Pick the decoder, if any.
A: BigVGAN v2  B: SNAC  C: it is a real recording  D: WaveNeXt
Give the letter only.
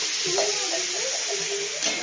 C